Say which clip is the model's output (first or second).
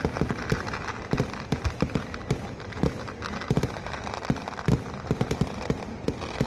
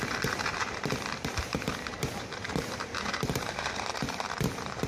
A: second